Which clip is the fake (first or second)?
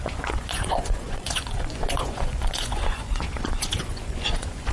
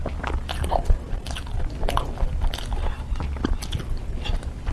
first